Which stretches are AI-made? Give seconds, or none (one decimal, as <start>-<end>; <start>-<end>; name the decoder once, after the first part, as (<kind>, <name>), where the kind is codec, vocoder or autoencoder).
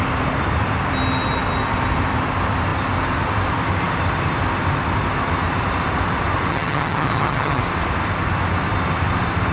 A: 6.5-7.6 (vocoder, HiFi-GAN)